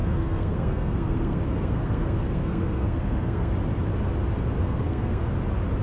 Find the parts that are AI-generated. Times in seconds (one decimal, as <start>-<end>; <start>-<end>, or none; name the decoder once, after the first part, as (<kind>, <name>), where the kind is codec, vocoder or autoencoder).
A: 0.0-3.5 (codec, SNAC); 4.6-5.2